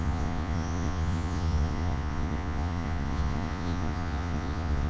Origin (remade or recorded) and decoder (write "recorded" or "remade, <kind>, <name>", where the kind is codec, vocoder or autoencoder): remade, vocoder, Vocos